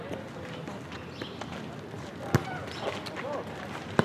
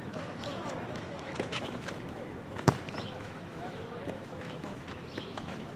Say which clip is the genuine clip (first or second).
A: first